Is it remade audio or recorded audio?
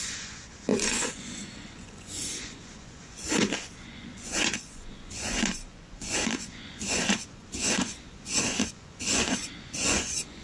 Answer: remade